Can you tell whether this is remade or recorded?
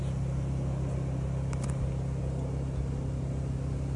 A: recorded